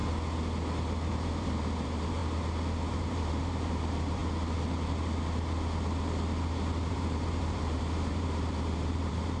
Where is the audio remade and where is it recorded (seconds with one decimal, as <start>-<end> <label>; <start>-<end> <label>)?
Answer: 0.0-1.1 recorded; 1.1-2.2 remade; 2.2-2.9 recorded; 2.9-4.2 remade; 4.2-6.9 recorded; 6.9-9.4 remade